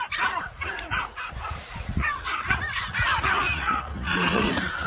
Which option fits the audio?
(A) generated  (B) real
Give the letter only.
A